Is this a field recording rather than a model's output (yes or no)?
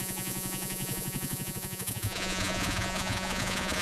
no